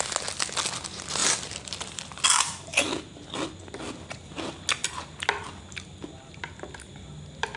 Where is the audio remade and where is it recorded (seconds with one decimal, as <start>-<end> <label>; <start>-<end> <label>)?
0.0-1.2 recorded; 1.2-2.2 remade; 2.2-7.6 recorded